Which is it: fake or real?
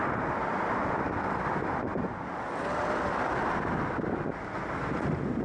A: real